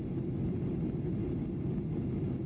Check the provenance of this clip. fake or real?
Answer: real